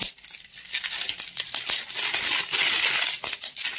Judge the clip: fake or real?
real